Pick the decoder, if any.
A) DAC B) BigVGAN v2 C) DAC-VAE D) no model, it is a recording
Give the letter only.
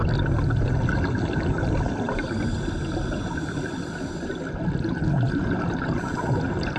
D